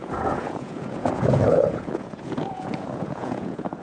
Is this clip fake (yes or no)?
yes